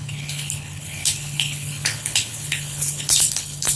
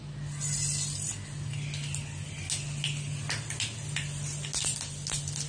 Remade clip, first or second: first